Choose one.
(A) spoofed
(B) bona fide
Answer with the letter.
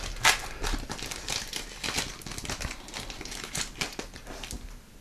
B